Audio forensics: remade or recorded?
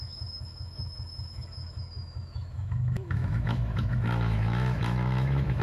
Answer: remade